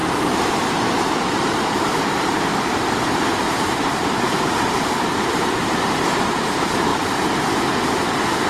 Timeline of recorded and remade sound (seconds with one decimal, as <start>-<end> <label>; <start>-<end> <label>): 0.0-6.9 remade; 6.9-8.5 recorded